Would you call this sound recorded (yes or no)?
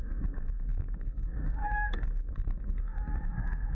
no